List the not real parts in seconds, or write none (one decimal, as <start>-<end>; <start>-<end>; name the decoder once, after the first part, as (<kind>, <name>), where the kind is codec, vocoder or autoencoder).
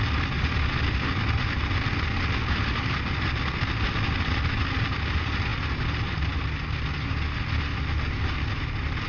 none